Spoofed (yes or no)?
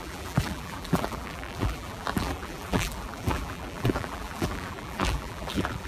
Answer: yes